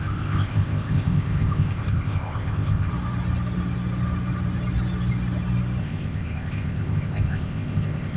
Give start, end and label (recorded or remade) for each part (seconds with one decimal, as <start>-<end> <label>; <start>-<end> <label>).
0.0-2.9 remade; 2.9-5.8 recorded; 5.8-8.2 remade